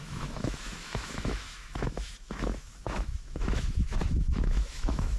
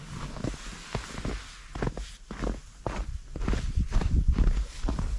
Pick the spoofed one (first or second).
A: first